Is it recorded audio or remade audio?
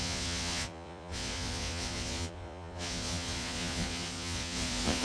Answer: remade